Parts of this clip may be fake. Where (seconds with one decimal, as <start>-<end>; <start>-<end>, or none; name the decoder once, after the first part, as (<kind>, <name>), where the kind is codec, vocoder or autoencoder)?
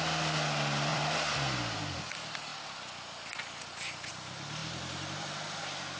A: 0.9-2.1 (vocoder, BigVGAN v2); 4.6-5.6